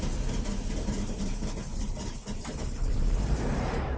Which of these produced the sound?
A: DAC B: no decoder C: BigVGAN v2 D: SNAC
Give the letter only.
C